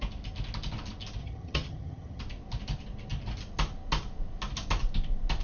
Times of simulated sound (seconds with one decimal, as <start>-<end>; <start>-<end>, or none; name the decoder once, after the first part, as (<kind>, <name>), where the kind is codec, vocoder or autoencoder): 1.2-2.2 (vocoder, HiFi-GAN)